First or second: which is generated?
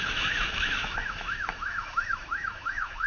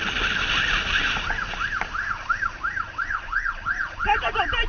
first